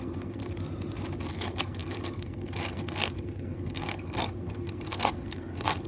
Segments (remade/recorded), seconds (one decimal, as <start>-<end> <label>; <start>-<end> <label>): 0.0-0.4 remade; 0.4-1.3 recorded; 1.3-5.9 remade

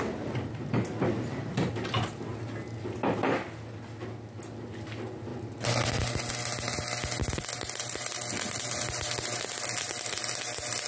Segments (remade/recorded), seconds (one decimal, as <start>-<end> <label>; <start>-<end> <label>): 0.0-10.9 recorded

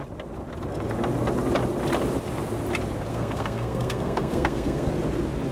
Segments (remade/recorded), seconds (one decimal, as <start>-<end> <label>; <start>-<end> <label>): 0.0-3.1 recorded; 3.1-4.9 remade; 4.9-5.5 recorded

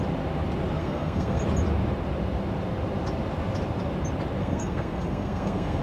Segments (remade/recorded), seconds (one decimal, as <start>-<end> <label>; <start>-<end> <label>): 0.0-0.8 recorded; 0.8-1.4 remade; 1.4-4.4 recorded; 4.4-5.8 remade

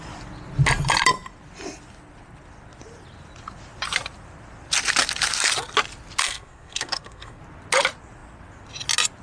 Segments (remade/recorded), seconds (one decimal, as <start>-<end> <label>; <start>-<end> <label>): 0.0-6.2 recorded; 6.2-7.4 remade; 7.4-9.2 recorded

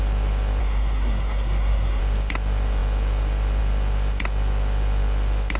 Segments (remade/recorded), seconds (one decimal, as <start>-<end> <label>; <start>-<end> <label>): 0.0-0.6 recorded; 0.6-2.0 remade; 2.0-5.6 recorded